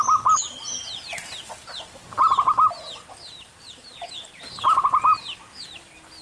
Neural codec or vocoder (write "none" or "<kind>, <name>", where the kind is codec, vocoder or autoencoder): none